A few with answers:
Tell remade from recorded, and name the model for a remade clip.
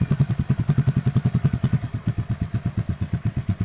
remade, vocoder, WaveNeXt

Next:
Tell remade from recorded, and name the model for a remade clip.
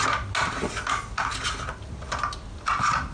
recorded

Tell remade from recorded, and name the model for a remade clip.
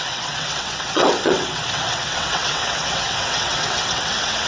remade, vocoder, WaveNeXt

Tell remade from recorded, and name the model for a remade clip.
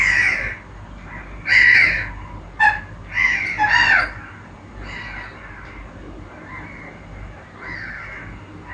recorded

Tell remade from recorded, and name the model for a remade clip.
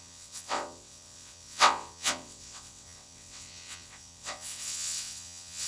remade, vocoder, WaveNeXt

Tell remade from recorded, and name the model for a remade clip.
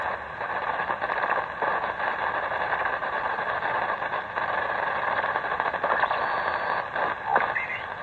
recorded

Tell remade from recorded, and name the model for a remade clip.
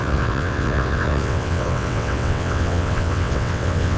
remade, vocoder, WaveNeXt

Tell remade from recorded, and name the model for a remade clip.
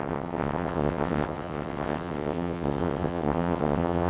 remade, vocoder, WaveNeXt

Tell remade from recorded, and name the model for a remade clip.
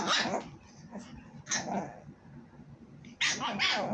recorded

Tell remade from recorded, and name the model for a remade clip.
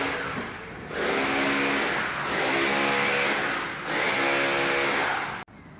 recorded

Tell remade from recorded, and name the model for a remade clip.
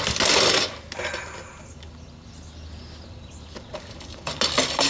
recorded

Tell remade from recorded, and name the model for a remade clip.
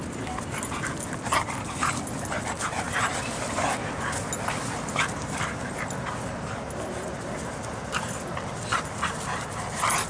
recorded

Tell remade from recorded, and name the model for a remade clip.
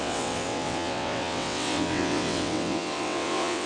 remade, vocoder, WaveNeXt